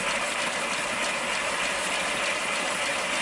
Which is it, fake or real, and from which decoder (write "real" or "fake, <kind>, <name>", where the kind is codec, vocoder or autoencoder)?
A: real